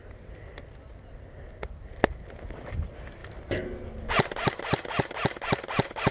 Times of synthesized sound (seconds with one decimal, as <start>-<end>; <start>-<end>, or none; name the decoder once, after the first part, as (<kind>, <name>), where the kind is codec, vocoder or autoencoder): none